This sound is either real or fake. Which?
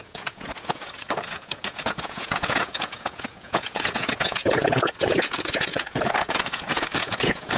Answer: fake